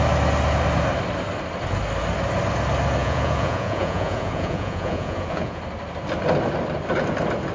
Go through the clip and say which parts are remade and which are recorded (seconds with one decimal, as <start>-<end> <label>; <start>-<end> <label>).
0.0-3.0 recorded; 3.0-5.6 remade; 5.6-7.5 recorded